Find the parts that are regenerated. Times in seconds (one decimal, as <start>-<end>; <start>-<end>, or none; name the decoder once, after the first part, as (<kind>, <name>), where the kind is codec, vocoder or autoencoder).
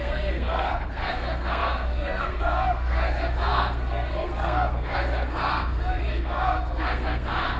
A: 0.0-7.6 (codec, SNAC)